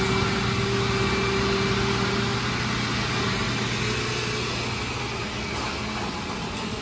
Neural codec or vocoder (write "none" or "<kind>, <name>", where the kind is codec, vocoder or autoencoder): none